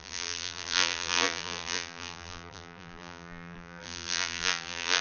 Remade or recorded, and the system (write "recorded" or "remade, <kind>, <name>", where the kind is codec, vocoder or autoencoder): remade, vocoder, BigVGAN v2